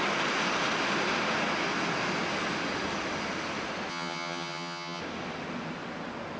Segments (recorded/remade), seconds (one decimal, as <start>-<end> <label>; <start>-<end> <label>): 0.0-3.9 recorded; 3.9-5.0 remade; 5.0-6.4 recorded